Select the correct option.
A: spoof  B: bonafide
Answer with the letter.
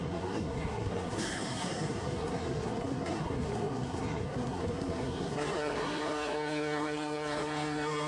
A